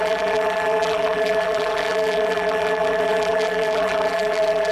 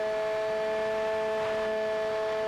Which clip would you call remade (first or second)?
first